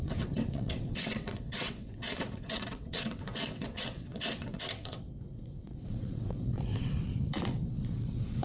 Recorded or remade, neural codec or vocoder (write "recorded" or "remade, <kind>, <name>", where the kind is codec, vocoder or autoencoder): remade, vocoder, WaveNeXt